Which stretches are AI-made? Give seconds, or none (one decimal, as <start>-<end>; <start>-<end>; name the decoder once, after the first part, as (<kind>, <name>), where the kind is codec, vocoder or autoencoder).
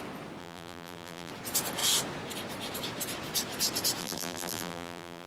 0.4-1.3 (vocoder, BigVGAN v2); 4.0-5.3